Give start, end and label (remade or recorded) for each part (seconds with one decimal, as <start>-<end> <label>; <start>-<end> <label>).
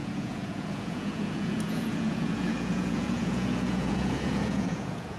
0.0-5.2 remade